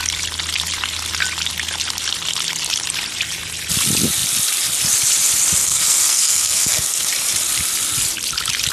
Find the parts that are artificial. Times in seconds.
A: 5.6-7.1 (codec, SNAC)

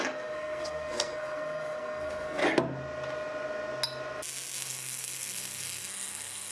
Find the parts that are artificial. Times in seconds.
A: 0.0-2.4 (codec, SNAC); 4.6-6.5